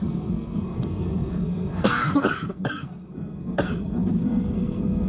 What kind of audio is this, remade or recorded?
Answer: remade